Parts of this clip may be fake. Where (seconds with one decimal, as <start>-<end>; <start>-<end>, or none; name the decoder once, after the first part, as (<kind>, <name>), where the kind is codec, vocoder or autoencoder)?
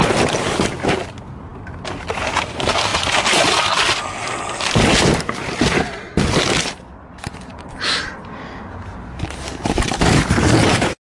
none